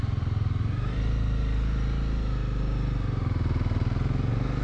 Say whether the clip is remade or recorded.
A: recorded